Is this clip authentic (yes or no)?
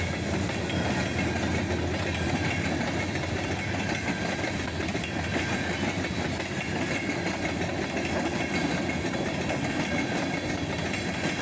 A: yes